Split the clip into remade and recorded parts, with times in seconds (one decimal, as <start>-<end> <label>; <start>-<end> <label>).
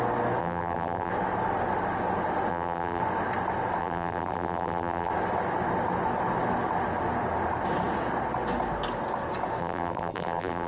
0.0-0.4 recorded; 0.4-1.1 remade; 1.1-2.5 recorded; 2.5-3.0 remade; 3.0-3.8 recorded; 3.8-5.1 remade; 5.1-9.6 recorded; 9.6-10.7 remade